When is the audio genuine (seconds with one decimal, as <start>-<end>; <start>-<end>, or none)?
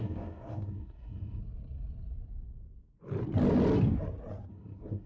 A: 1.4-4.5